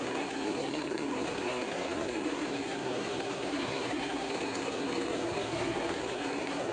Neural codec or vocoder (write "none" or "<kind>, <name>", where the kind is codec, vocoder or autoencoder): codec, SNAC